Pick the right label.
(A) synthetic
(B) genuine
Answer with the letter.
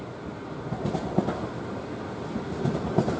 B